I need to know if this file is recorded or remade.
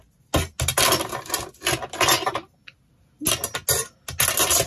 recorded